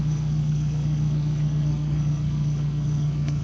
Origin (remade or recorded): remade